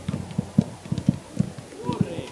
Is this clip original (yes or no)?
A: yes